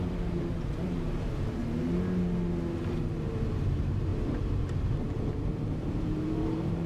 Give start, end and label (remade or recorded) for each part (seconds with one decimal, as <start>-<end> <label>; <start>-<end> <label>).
0.0-1.6 remade; 1.6-3.3 recorded; 3.3-4.1 remade; 4.1-4.6 recorded; 4.6-6.9 remade

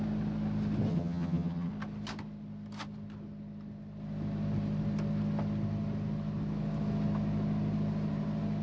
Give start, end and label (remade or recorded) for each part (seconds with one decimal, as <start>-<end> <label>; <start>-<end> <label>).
0.0-0.9 recorded; 0.9-1.7 remade; 1.7-8.6 recorded

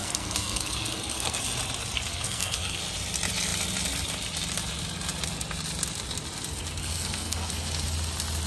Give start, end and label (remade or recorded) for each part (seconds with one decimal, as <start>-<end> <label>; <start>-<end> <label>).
0.0-1.4 remade; 1.4-2.1 recorded; 2.1-2.8 remade; 2.8-6.8 recorded; 6.8-7.5 remade; 7.5-8.5 recorded